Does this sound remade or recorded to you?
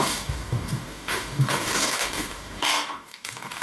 remade